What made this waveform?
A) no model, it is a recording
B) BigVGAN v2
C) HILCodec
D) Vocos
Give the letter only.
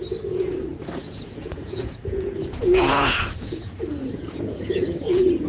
D